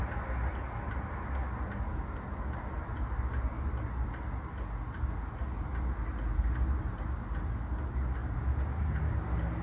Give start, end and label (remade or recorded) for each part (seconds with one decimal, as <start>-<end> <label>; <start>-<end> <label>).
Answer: 0.0-9.6 recorded